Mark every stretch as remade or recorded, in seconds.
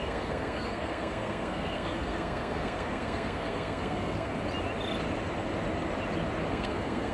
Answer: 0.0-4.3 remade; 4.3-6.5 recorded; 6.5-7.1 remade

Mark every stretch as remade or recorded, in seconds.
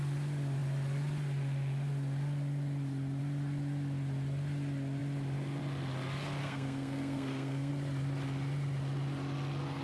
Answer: 0.0-6.4 recorded; 6.4-7.7 remade; 7.7-9.8 recorded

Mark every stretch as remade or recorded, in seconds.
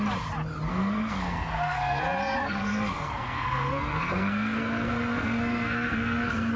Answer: 0.0-0.7 recorded; 0.7-2.0 remade; 2.0-2.4 recorded; 2.4-6.6 remade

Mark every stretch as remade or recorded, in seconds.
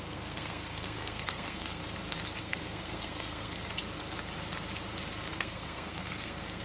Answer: 0.0-1.8 remade; 1.8-2.4 recorded; 2.4-3.8 remade; 3.8-5.3 recorded; 5.3-6.6 remade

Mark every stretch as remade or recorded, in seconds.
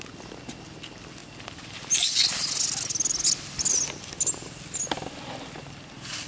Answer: 0.0-6.3 recorded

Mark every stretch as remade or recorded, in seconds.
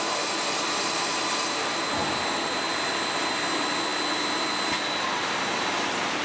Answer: 0.0-6.2 recorded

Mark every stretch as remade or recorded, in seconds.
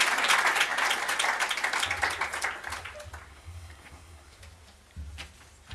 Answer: 0.0-3.3 recorded; 3.3-4.4 remade; 4.4-5.7 recorded